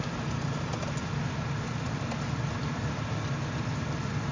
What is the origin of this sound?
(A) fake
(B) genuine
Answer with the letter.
B